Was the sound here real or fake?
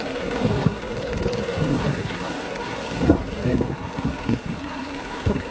fake